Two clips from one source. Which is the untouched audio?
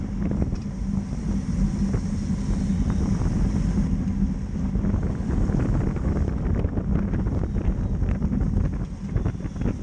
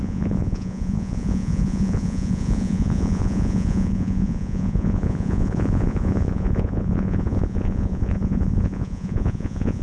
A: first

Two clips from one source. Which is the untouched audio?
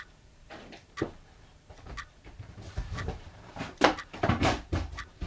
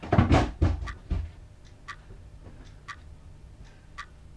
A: second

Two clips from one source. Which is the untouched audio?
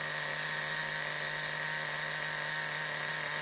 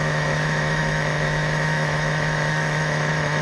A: first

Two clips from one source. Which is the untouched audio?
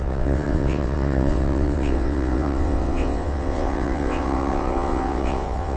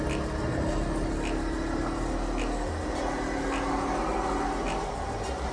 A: second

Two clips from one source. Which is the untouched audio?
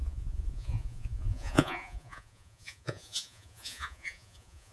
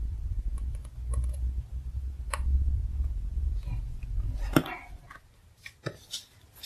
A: second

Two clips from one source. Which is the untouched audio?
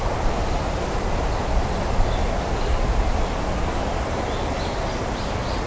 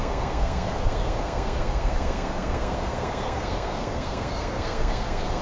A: first